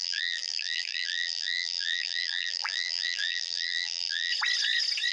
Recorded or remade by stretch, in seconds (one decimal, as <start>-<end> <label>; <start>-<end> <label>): 0.0-4.3 remade; 4.3-5.1 recorded